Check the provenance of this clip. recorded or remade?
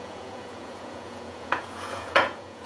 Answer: remade